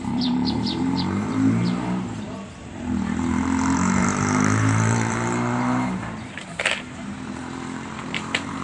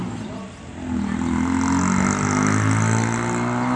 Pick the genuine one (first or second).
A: second